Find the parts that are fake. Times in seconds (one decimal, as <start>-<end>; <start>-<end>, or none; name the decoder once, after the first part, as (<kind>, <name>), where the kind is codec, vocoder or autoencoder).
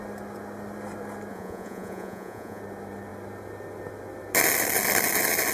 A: 1.3-2.6 (vocoder, Vocos)